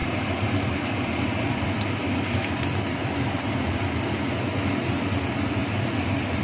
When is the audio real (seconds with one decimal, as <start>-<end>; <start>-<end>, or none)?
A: 3.8-6.4